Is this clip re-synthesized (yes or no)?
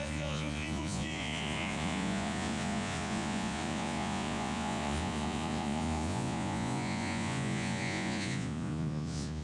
yes